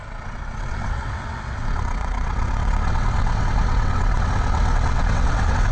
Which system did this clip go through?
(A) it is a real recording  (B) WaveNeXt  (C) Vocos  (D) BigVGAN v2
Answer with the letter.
B